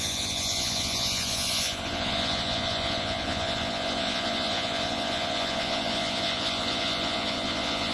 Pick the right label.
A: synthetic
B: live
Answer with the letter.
A